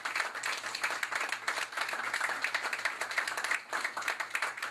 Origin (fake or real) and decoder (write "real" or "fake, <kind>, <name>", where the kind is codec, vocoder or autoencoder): real